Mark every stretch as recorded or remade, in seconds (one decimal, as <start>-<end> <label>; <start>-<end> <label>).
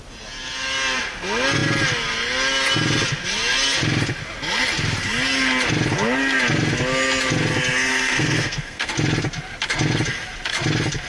0.0-7.9 recorded; 7.9-8.9 remade; 8.9-11.1 recorded